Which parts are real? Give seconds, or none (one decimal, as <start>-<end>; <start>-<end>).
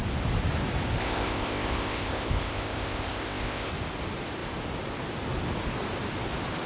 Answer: 0.0-1.0; 3.7-6.7